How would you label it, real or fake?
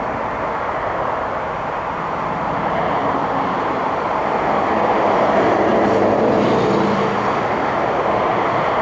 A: real